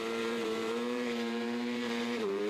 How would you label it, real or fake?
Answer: fake